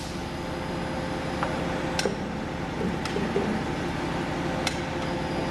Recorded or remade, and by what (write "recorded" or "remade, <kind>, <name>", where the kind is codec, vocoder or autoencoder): recorded